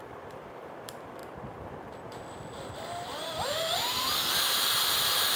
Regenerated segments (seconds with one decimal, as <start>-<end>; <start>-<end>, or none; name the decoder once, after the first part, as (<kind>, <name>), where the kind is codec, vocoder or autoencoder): 0.0-1.2 (vocoder, BigVGAN v2); 4.4-5.4